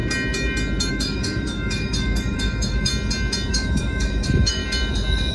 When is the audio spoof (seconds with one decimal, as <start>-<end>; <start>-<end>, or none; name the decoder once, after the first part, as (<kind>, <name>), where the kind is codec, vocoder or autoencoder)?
0.9-2.9 (autoencoder, DAC-VAE); 3.5-4.6